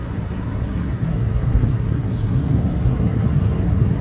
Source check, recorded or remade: remade